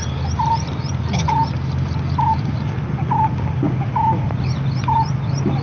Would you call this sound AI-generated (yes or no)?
no